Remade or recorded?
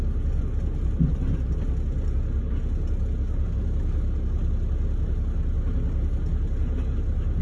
recorded